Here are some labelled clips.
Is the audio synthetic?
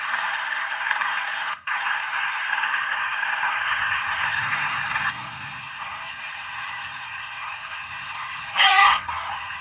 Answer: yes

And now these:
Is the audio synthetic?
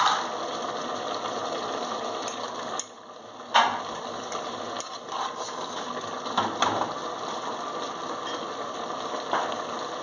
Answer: no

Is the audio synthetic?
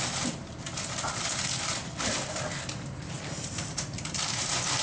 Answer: no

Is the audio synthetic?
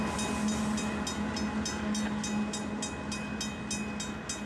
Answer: no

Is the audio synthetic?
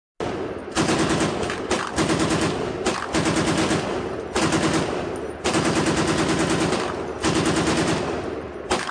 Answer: no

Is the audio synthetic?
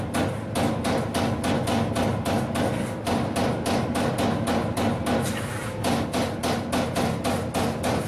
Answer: no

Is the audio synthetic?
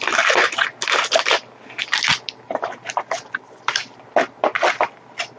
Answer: no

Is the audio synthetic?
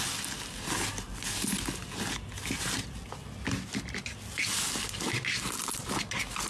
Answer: no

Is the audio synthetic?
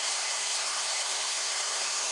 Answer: yes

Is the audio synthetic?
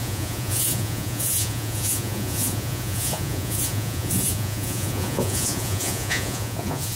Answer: yes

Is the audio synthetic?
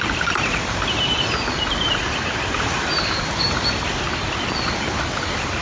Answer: no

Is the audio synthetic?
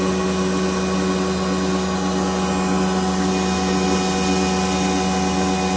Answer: no